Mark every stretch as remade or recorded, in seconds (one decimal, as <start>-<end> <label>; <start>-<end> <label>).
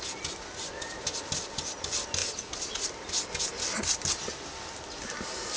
0.0-5.6 recorded